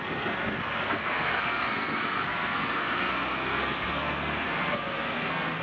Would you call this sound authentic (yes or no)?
no